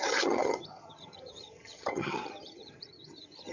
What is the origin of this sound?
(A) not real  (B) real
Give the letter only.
A